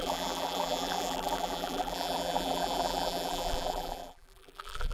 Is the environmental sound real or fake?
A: fake